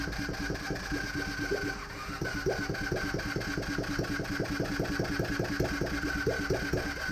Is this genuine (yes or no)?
yes